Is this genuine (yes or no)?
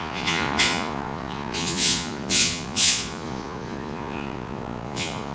no